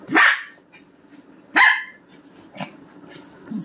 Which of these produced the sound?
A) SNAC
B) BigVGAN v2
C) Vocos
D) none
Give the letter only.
D